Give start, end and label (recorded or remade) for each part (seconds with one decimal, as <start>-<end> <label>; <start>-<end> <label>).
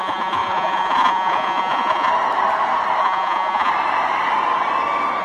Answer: 0.0-2.1 remade; 2.1-3.0 recorded; 3.0-3.7 remade; 3.7-5.2 recorded